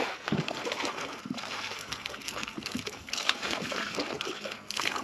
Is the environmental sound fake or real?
fake